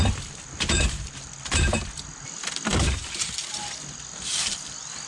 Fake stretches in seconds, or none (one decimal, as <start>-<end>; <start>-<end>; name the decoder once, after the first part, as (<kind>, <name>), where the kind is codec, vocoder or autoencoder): none